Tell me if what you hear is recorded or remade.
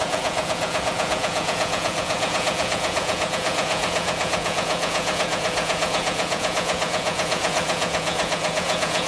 remade